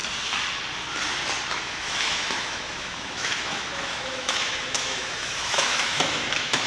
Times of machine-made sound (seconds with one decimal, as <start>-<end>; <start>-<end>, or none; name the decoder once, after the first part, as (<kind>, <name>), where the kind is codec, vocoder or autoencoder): 1.5-6.7 (autoencoder, DAC-VAE)